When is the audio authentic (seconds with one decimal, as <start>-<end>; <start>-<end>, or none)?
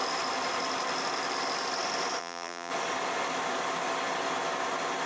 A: 0.0-2.2; 2.7-5.1